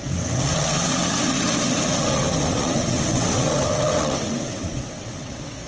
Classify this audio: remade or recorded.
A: remade